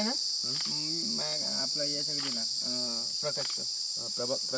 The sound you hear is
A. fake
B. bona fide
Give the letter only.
B